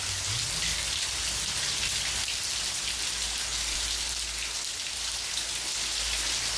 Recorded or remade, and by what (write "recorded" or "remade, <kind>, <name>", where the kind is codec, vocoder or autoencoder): recorded